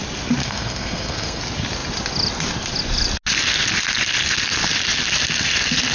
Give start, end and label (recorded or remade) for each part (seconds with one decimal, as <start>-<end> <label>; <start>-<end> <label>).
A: 0.0-0.4 recorded; 0.4-1.4 remade; 1.4-5.9 recorded